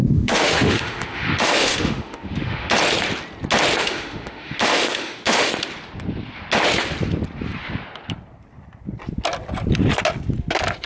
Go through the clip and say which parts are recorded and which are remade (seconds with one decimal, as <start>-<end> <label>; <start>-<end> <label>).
0.0-2.7 remade; 2.7-3.8 recorded; 3.8-5.5 remade; 5.5-10.9 recorded